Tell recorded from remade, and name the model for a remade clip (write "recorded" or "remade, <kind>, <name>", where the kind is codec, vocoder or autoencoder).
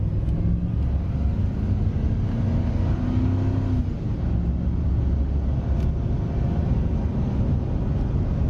recorded